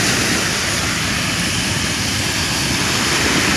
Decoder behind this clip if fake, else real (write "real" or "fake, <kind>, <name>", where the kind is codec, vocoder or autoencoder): fake, vocoder, BigVGAN v2